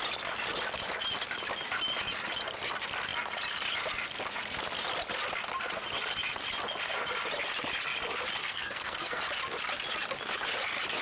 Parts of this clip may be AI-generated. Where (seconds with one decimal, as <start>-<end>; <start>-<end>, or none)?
8.4-9.2